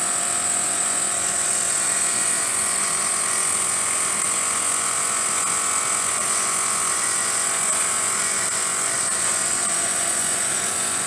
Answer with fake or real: fake